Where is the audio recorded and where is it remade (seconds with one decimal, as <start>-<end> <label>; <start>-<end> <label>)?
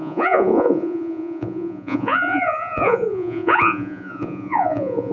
0.0-5.1 remade